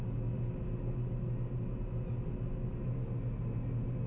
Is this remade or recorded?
recorded